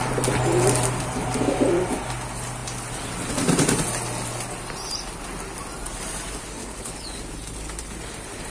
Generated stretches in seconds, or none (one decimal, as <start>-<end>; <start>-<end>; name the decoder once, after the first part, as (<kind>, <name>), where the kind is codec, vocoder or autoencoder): 6.6-7.2 (codec, HILCodec)